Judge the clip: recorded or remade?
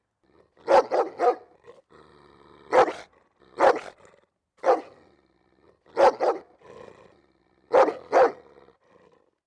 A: recorded